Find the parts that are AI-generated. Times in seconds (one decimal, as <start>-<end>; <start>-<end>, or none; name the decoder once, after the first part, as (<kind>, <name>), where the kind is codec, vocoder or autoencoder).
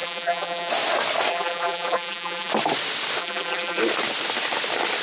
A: 0.0-0.7 (vocoder, BigVGAN v2); 1.3-2.5; 3.2-3.8